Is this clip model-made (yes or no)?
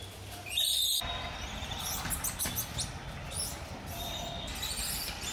no